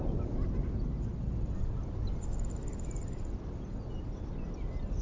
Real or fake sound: real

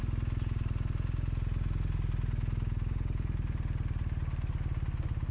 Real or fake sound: real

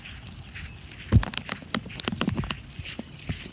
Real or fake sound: real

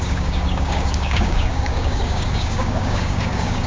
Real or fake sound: fake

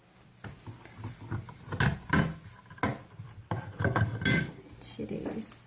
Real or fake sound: real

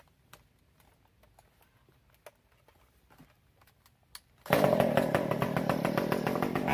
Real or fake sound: real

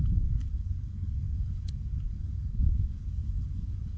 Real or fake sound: fake